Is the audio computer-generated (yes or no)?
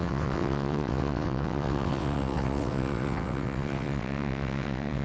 yes